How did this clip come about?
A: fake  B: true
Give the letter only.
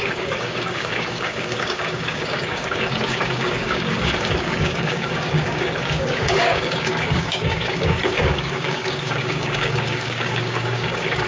A